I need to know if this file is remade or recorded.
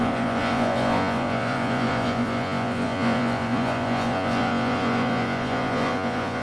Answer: remade